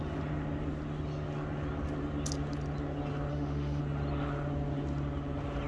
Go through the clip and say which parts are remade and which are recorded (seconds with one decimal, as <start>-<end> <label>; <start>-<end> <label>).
0.0-3.3 recorded; 3.3-3.8 remade; 3.8-5.7 recorded

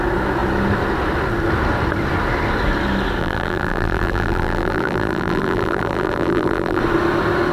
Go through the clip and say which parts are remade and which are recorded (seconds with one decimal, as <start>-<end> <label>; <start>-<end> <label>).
0.0-3.2 recorded; 3.2-6.8 remade; 6.8-7.5 recorded

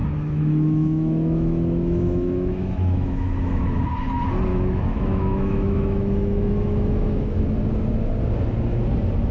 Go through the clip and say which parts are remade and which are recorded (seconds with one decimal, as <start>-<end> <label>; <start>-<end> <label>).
0.0-3.8 remade; 3.8-4.5 recorded; 4.5-7.4 remade; 7.4-9.3 recorded